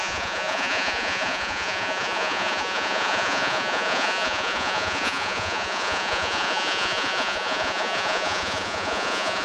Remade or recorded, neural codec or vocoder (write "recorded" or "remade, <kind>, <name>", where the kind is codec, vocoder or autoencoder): remade, vocoder, Vocos